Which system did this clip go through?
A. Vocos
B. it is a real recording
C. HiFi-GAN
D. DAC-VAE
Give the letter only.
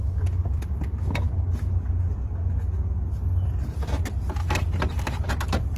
B